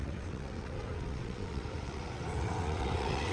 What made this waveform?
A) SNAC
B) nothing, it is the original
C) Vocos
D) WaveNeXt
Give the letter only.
D